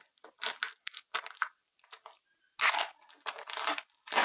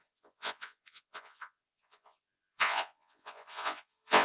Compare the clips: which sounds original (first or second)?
first